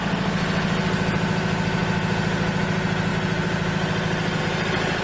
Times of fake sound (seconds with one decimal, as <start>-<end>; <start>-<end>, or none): none